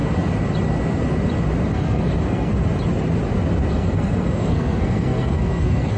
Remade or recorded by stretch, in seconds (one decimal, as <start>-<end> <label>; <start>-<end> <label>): 0.0-1.7 recorded; 1.7-2.5 remade; 2.5-3.7 recorded; 3.7-6.0 remade